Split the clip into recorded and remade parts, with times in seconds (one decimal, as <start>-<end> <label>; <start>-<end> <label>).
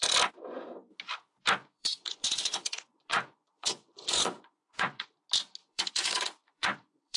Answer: 0.0-1.6 recorded; 1.6-5.1 remade; 5.1-5.6 recorded; 5.6-7.2 remade